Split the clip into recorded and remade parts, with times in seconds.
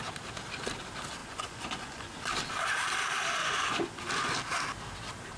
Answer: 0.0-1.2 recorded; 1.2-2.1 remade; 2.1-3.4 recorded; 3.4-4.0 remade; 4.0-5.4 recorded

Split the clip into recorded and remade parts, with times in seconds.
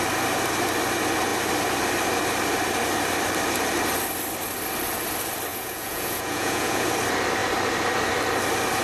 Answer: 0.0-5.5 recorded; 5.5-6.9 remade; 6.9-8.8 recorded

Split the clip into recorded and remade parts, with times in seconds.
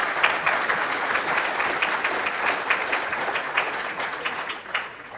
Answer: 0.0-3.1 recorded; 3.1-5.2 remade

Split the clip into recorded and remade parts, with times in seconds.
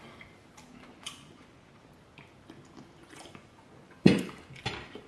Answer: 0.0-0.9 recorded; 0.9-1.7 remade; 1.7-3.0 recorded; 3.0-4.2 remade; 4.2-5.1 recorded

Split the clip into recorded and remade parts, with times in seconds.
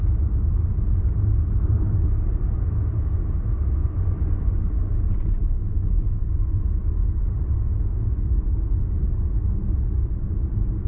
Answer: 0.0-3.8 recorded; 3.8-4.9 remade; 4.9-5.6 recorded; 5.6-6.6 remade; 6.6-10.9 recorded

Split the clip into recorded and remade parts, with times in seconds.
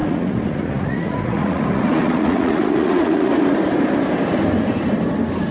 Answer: 0.0-3.3 remade; 3.3-5.5 recorded